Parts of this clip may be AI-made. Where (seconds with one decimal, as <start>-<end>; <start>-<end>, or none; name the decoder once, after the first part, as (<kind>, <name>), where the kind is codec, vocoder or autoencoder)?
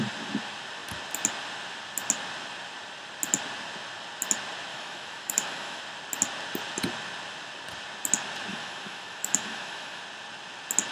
4.7-5.8 (autoencoder, DAC-VAE); 8.5-10.0